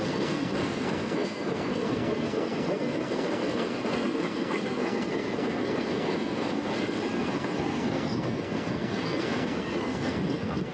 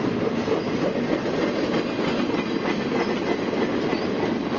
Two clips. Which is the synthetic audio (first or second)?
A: first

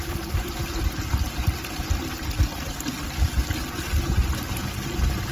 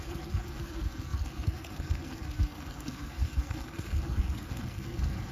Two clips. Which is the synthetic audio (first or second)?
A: second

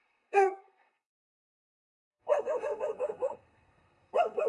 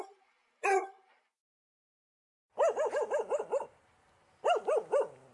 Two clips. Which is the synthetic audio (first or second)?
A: first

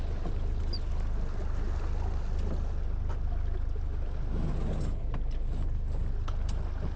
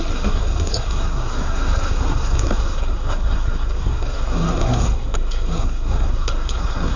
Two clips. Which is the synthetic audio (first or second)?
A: second